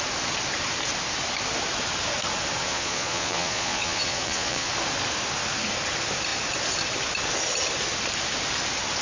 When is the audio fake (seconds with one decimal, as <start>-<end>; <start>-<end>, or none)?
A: 2.6-4.7